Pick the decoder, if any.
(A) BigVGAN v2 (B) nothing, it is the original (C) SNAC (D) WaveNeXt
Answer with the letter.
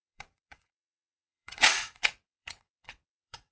D